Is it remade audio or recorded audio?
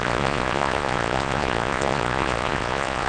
remade